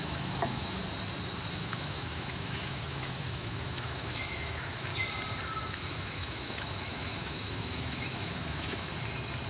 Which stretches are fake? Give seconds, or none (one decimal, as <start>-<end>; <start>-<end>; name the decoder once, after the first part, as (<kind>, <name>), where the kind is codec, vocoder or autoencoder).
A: 0.0-0.8 (autoencoder, DAC-VAE); 1.5-4.9; 5.7-8.9